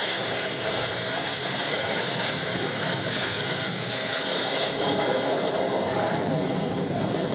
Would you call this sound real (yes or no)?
no